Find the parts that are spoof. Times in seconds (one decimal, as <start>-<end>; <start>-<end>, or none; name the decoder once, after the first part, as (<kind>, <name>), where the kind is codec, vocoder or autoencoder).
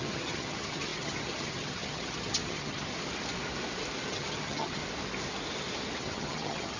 0.0-2.9 (vocoder, HiFi-GAN); 4.1-4.8; 6.0-6.8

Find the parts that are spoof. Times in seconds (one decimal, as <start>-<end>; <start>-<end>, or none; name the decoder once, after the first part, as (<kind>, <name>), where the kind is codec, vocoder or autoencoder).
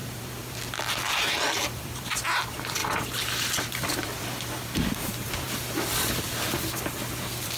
0.0-2.1 (vocoder, BigVGAN v2); 2.8-7.6